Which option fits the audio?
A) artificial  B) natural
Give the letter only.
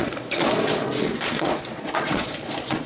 A